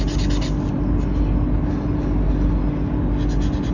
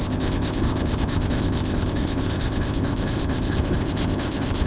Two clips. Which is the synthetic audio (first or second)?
second